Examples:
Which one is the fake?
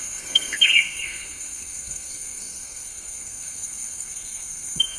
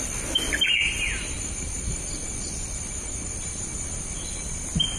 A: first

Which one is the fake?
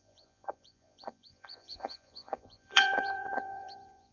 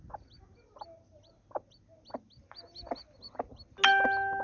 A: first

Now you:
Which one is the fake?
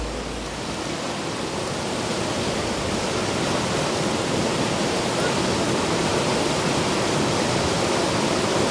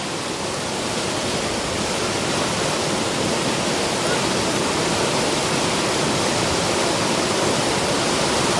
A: second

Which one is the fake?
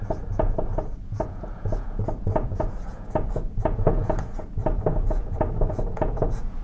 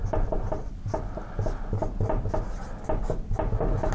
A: first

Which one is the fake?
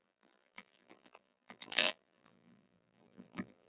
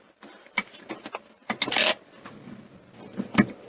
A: first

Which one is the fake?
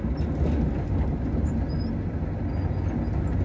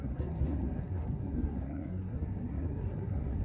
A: second